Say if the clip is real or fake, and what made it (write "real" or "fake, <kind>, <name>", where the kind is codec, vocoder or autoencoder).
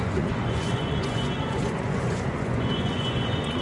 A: fake, vocoder, Vocos